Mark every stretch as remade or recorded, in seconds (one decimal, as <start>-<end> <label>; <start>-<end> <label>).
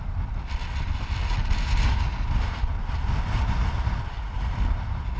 0.0-5.2 recorded